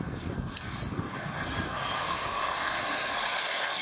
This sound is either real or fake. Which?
fake